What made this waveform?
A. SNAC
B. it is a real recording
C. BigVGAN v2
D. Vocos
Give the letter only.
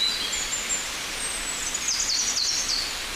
B